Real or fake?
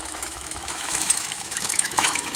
fake